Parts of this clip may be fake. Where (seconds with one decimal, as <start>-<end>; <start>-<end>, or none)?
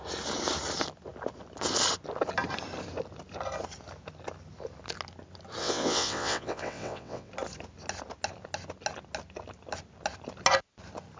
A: 5.6-7.3